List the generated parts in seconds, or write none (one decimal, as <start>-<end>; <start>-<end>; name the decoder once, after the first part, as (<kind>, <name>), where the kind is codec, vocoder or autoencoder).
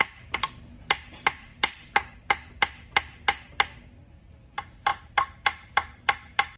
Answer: 0.0-1.5 (vocoder, BigVGAN v2); 4.2-4.9